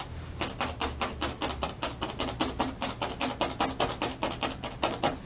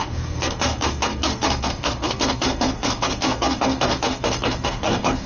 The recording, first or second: first